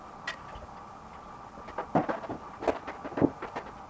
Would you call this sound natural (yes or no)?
yes